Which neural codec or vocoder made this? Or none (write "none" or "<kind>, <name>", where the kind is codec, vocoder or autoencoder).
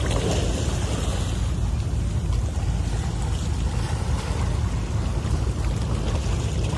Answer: none